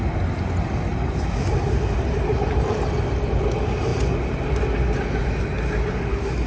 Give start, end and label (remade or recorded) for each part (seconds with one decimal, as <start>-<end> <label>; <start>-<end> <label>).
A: 0.0-6.5 recorded